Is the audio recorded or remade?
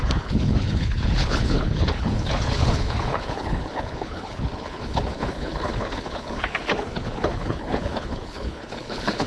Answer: remade